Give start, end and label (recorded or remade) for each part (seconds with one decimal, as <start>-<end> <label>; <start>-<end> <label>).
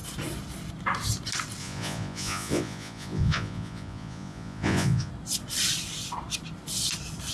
0.0-1.6 recorded; 1.6-5.1 remade; 5.1-7.3 recorded